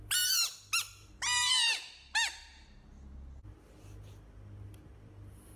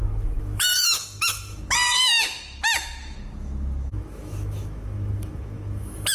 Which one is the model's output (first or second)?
second